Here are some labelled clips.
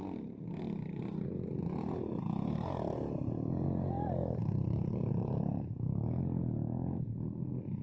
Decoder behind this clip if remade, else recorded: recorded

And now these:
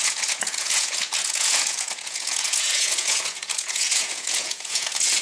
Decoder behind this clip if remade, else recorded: remade, vocoder, Vocos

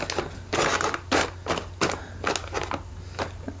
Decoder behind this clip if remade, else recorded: recorded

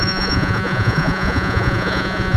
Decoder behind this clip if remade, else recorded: remade, vocoder, Vocos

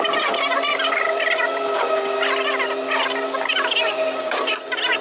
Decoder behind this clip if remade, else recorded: recorded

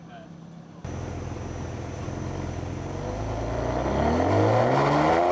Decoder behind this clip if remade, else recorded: recorded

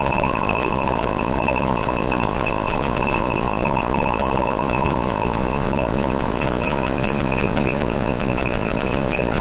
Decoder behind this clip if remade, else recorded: remade, vocoder, Vocos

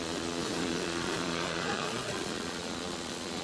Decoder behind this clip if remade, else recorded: remade, vocoder, Vocos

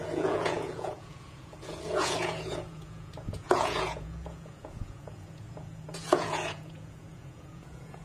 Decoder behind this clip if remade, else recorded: remade, vocoder, Vocos